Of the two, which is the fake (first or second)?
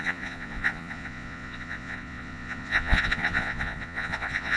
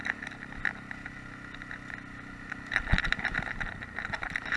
first